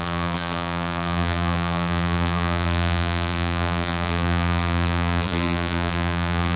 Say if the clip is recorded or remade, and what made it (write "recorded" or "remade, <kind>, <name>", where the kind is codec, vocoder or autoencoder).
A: remade, vocoder, BigVGAN v2